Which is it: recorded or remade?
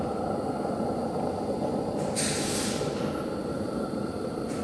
recorded